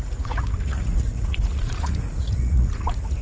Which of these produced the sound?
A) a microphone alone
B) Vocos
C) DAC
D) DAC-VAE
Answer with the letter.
B